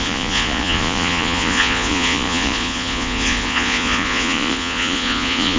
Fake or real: fake